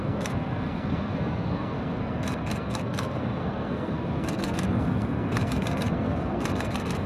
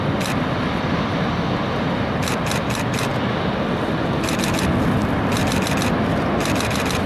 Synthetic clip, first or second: first